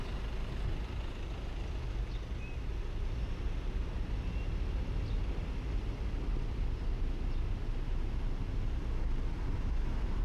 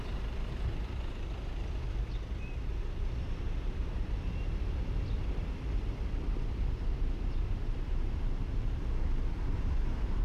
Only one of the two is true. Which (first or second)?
first